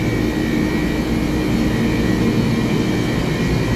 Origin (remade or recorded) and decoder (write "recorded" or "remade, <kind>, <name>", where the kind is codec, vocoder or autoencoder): recorded